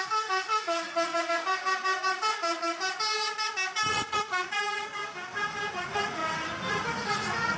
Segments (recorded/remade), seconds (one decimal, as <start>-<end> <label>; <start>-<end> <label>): 0.0-1.1 remade; 1.1-3.9 recorded; 3.9-5.0 remade; 5.0-5.7 recorded; 5.7-6.2 remade; 6.2-6.7 recorded; 6.7-7.6 remade